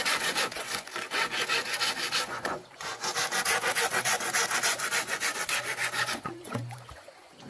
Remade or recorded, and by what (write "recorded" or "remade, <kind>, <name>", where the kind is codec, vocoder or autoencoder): remade, vocoder, Vocos